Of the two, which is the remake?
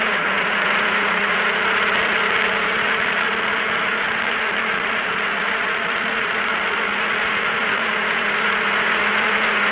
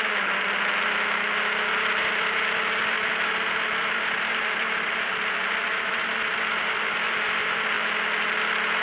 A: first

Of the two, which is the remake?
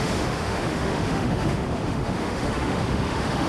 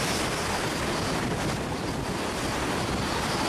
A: first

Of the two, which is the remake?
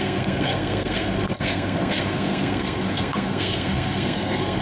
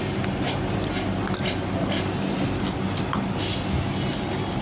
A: first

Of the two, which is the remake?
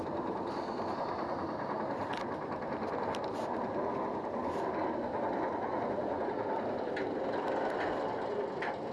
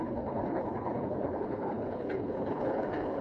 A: second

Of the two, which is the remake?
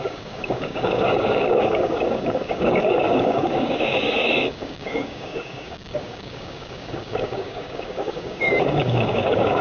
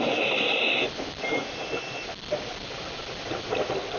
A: first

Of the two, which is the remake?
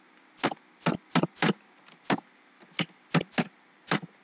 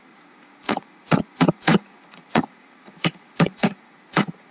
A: second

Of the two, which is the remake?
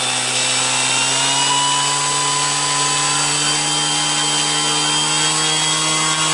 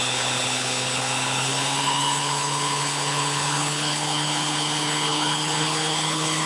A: second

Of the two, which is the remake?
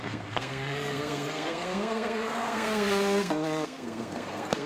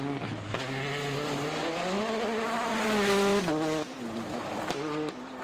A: first